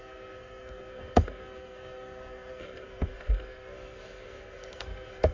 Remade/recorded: remade